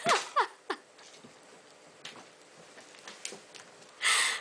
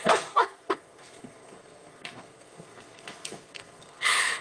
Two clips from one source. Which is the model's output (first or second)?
second